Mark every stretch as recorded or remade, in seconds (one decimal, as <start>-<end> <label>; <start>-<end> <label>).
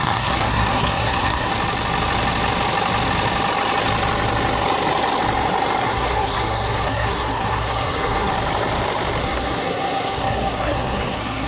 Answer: 0.0-1.5 remade; 1.5-5.8 recorded; 5.8-8.3 remade; 8.3-9.2 recorded; 9.2-11.5 remade